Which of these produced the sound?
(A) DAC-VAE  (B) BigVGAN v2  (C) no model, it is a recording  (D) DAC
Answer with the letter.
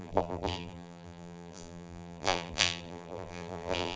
B